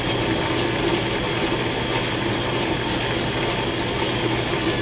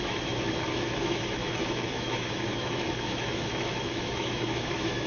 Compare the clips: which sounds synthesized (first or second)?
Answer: second